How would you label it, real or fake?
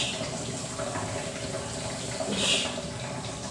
real